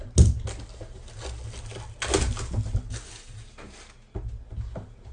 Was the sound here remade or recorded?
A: recorded